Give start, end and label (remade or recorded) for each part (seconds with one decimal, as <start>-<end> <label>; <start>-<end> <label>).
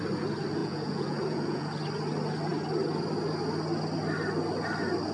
0.0-0.6 recorded; 0.6-1.7 remade; 1.7-5.1 recorded